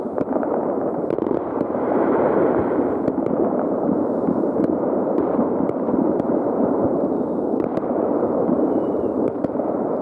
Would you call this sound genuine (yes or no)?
no